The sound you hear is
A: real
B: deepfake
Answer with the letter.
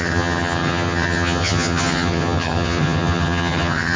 B